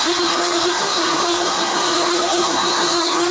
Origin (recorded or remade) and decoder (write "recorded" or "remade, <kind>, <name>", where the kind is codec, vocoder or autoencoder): remade, codec, SNAC